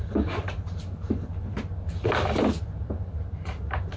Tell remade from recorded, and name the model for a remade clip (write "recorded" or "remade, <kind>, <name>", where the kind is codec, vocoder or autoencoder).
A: recorded